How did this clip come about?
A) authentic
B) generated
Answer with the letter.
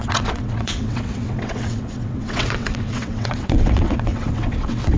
B